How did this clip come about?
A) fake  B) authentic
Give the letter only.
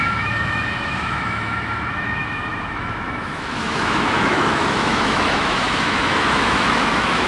A